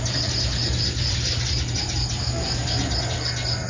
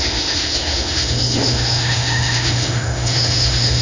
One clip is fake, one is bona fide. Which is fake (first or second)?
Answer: second